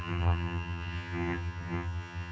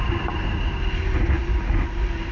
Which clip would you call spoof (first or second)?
first